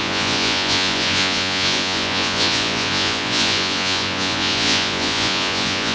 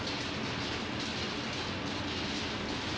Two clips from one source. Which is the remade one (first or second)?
first